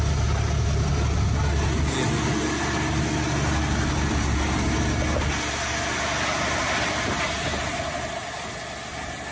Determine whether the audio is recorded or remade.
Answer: recorded